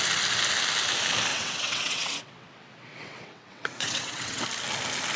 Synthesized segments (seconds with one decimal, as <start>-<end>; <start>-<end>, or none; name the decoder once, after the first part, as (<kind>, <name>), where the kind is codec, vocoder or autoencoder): 1.3-4.4 (vocoder, WaveNeXt)